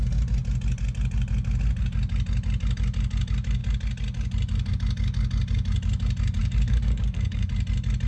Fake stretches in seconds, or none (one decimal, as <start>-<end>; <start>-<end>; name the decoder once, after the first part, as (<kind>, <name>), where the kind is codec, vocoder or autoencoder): 6.4-7.4 (codec, DAC)